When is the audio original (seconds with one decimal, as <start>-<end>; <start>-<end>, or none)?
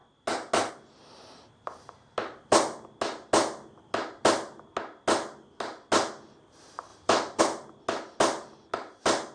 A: 0.0-6.9; 7.4-9.3